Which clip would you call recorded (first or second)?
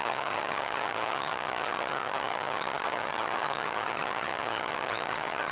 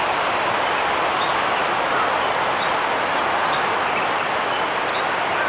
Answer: second